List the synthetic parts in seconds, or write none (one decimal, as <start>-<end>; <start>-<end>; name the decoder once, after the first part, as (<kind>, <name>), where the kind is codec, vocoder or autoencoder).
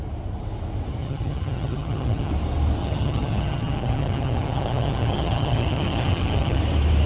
1.0-2.3 (vocoder, HiFi-GAN); 2.8-6.6